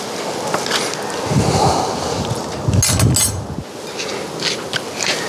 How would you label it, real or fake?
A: real